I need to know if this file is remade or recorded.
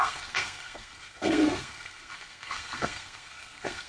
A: remade